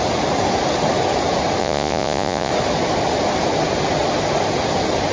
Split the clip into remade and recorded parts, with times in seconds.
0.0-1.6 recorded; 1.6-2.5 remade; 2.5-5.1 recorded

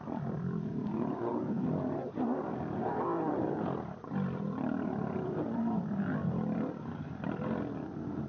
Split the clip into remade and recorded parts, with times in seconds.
0.0-8.3 recorded